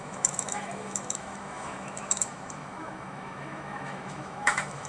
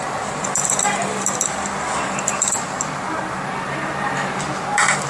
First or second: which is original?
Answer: second